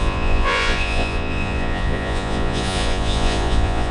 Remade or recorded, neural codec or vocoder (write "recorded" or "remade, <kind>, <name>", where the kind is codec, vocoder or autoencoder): remade, vocoder, Vocos